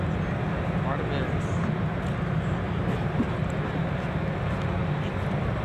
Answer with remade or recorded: recorded